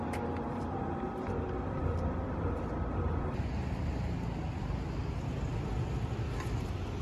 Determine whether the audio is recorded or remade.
recorded